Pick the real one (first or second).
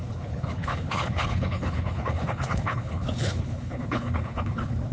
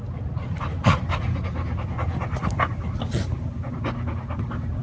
second